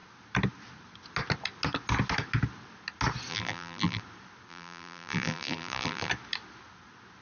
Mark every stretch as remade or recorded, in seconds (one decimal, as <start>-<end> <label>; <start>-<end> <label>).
0.0-3.3 recorded; 3.3-4.0 remade; 4.0-4.5 recorded; 4.5-6.1 remade; 6.1-7.2 recorded